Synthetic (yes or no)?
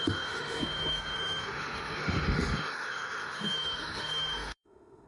yes